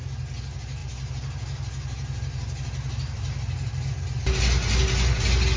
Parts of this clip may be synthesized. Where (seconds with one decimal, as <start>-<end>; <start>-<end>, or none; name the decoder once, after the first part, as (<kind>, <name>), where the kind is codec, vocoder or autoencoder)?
none